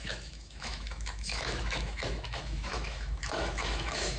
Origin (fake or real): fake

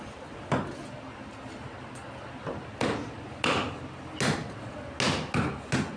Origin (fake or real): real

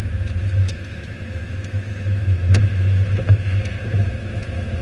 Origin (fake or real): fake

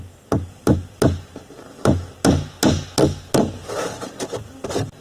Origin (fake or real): real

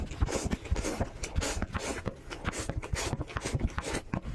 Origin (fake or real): real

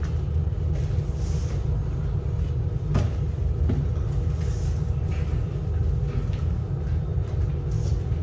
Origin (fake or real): real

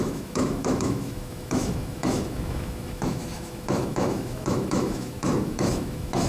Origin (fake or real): fake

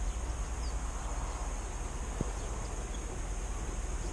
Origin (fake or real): real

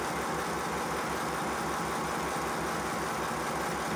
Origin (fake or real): real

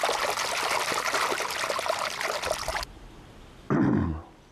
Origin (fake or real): real